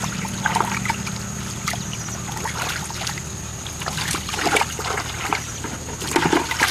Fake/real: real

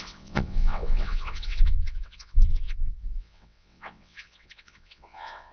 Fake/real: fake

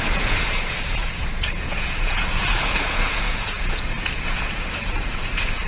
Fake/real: fake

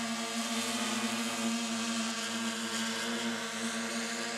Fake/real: real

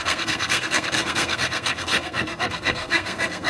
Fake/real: fake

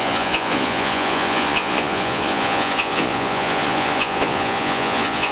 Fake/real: fake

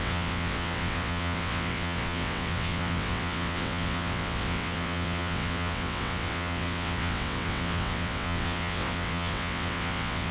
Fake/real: fake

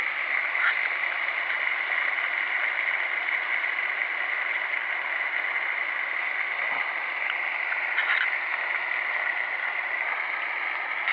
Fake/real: real